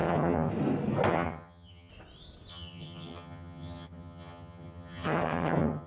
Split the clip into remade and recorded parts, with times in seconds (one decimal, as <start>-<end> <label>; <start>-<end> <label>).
0.0-0.5 remade; 0.5-1.1 recorded; 1.1-1.9 remade; 1.9-2.5 recorded; 2.5-5.9 remade